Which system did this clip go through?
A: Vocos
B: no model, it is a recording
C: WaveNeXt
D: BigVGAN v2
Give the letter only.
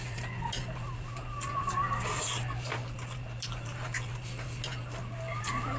B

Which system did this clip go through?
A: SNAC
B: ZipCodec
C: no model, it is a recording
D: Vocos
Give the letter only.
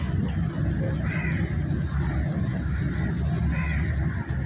C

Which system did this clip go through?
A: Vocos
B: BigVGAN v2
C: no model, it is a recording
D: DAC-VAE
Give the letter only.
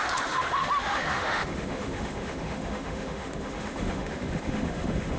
D